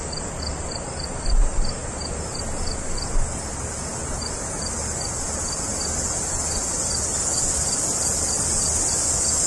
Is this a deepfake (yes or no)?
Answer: no